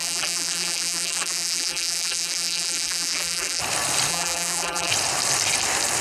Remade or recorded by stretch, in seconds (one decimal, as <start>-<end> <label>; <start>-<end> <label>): 0.0-3.6 remade; 3.6-4.1 recorded; 4.1-4.9 remade; 4.9-6.0 recorded